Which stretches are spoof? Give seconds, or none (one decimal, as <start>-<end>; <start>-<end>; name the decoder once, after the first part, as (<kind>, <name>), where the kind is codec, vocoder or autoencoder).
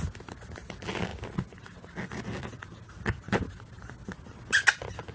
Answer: none